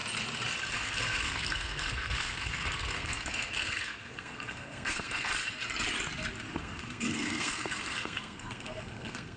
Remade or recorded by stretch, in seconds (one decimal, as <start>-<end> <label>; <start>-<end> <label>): 0.0-0.7 recorded; 0.7-5.3 remade; 5.3-6.6 recorded; 6.6-9.4 remade